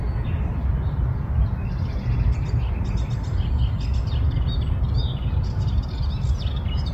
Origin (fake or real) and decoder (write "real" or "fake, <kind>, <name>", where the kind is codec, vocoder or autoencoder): real